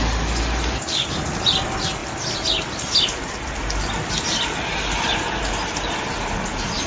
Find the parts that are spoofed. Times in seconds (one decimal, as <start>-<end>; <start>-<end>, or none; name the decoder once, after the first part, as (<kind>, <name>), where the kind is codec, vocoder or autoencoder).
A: none